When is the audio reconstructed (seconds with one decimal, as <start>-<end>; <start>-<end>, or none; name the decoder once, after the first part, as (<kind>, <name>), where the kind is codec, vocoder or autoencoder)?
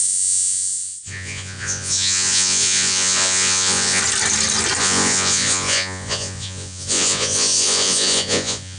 0.0-4.0 (vocoder, Vocos); 4.8-8.8